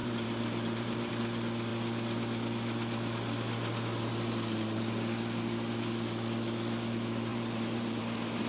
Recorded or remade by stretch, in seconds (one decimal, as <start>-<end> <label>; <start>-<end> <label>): 0.0-1.1 remade; 1.1-7.3 recorded; 7.3-8.0 remade; 8.0-8.5 recorded